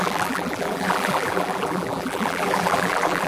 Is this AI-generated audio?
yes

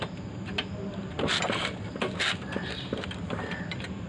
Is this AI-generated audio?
yes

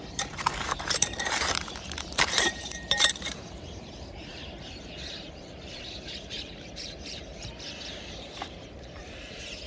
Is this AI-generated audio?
yes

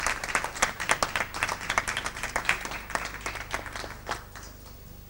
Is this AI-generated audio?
no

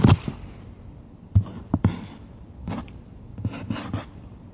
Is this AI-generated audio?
yes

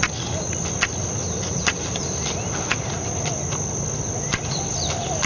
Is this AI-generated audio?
no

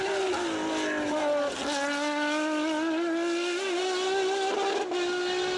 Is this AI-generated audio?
no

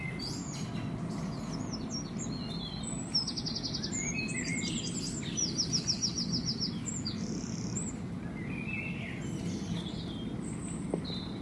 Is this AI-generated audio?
no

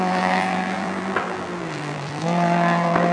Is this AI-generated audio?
yes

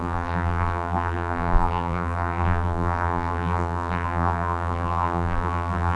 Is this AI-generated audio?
yes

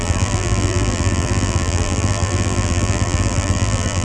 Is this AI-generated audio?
yes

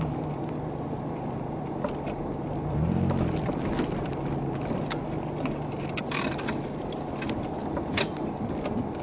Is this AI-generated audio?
no